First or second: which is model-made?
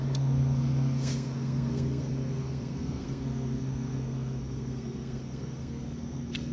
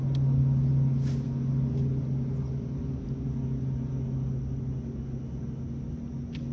first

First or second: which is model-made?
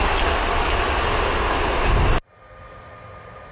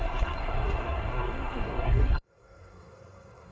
second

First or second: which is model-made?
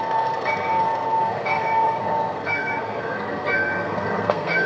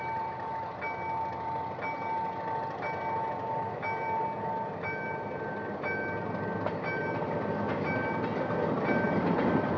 first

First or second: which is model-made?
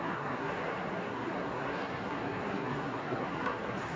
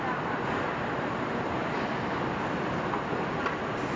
first